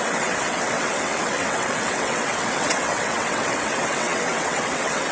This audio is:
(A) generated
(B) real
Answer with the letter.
A